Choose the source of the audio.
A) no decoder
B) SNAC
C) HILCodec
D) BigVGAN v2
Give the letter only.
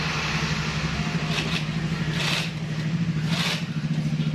A